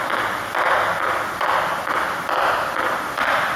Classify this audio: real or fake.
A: real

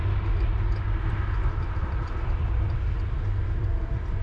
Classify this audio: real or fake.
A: real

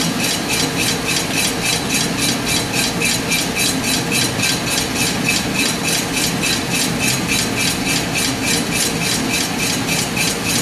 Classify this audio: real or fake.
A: real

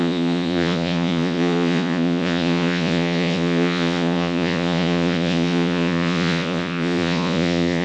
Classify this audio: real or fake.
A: fake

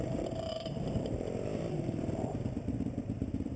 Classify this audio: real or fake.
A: fake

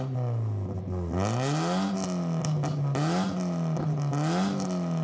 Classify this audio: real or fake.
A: real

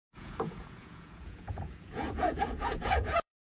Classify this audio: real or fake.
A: fake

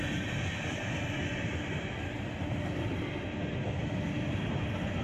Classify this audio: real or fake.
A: real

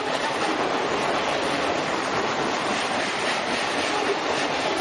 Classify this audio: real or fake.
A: fake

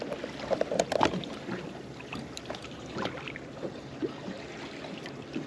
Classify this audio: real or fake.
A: real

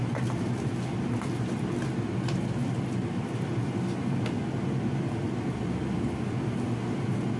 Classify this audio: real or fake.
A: real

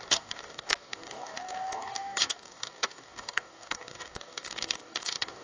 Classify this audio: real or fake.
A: fake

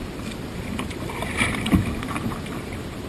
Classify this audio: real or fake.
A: real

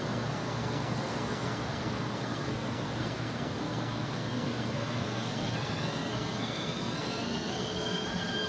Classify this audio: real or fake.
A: fake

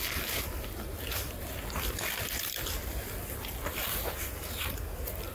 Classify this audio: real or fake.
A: real